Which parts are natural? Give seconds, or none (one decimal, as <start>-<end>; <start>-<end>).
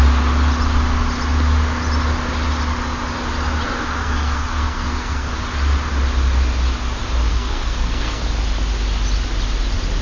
0.0-4.0; 5.3-7.3; 8.2-10.0